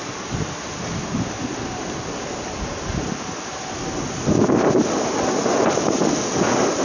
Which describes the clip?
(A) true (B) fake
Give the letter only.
A